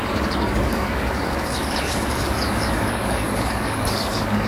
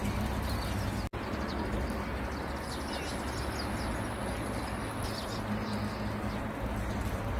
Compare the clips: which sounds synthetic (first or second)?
first